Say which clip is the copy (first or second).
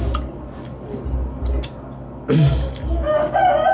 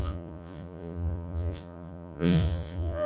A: second